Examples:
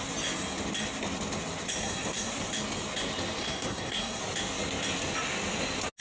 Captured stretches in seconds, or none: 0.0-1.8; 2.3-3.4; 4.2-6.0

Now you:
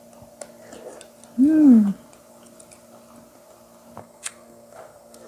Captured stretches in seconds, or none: 0.0-4.0

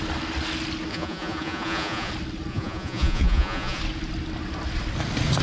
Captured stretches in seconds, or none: 0.0-0.9; 2.1-2.5; 3.8-5.4

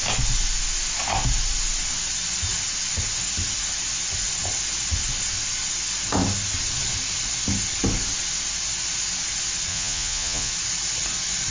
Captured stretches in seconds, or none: 0.0-9.7; 10.5-11.5

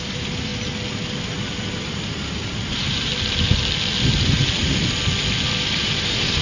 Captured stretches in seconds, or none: 0.5-1.9; 3.1-5.8

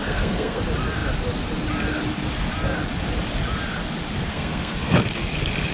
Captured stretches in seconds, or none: 0.6-4.3; 5.0-5.7

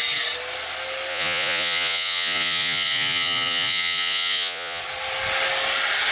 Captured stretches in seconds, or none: 0.0-1.1; 4.8-6.1

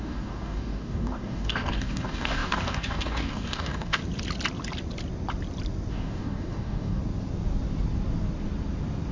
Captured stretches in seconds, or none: 4.0-5.9; 7.0-9.1